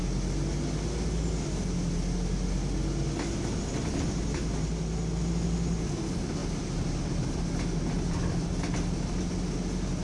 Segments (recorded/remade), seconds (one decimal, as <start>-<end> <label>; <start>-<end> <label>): 0.0-6.4 recorded; 6.4-7.0 remade; 7.0-10.0 recorded